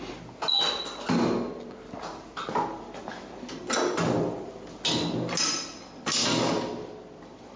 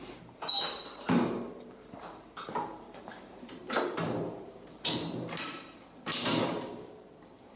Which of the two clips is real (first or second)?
first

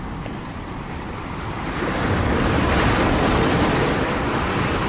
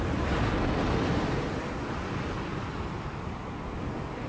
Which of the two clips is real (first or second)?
second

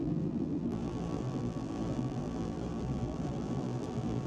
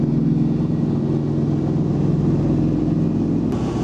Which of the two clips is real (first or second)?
second